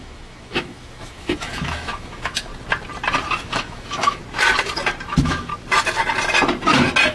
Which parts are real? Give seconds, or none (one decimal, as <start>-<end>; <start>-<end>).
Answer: 2.5-3.4; 4.2-5.1; 5.5-7.1